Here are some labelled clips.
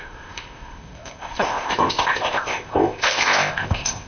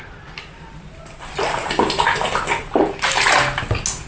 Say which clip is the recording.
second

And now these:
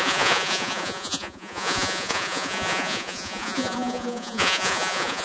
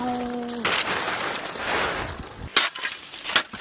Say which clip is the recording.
second